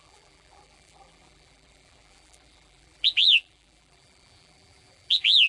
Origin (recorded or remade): remade